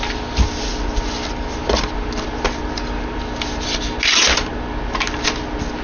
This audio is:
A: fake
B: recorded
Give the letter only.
B